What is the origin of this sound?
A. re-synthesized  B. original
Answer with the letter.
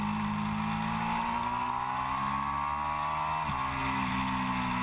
B